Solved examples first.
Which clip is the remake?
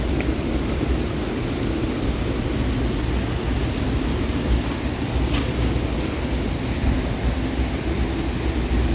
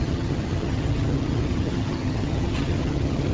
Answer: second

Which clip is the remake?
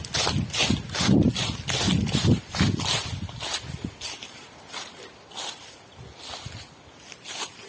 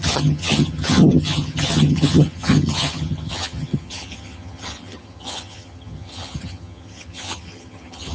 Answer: second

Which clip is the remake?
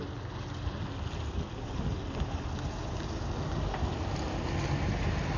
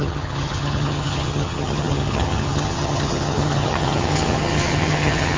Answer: second